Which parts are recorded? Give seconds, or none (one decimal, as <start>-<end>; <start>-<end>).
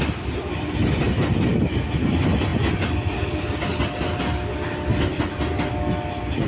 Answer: 0.0-6.5